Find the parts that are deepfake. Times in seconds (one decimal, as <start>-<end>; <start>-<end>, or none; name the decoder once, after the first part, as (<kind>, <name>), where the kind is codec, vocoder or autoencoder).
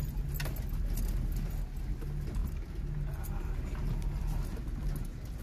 none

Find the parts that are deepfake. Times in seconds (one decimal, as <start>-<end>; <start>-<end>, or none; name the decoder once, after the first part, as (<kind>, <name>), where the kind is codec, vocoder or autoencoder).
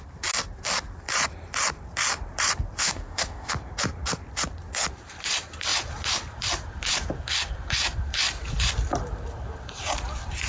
2.8-3.5 (autoencoder, DAC-VAE)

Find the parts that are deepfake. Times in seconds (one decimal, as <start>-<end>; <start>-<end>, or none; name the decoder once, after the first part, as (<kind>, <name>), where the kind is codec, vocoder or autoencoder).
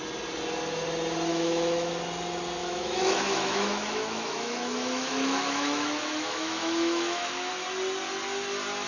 1.3-1.9 (autoencoder, DAC-VAE); 2.6-7.5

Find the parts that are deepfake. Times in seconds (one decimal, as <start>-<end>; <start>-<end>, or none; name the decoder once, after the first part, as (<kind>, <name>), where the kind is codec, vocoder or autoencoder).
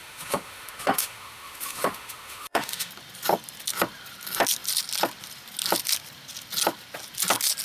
0.0-2.9 (autoencoder, DAC-VAE)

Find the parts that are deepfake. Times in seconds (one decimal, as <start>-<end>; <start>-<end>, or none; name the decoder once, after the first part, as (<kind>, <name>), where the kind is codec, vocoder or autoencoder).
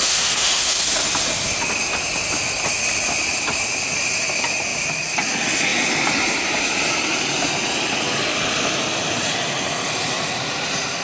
0.0-0.8 (autoencoder, DAC-VAE)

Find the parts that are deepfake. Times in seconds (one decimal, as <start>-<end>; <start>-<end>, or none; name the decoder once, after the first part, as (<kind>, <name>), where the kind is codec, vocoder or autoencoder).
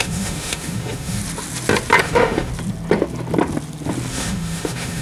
0.0-1.2 (autoencoder, DAC-VAE); 2.0-2.5; 4.1-5.0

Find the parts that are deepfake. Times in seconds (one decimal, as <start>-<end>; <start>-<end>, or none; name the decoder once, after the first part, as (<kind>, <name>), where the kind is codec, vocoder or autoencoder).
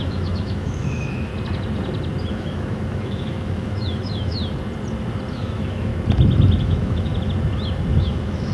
0.0-1.3 (autoencoder, DAC-VAE); 2.3-4.4; 5.3-5.9; 6.6-7.1; 8.0-8.5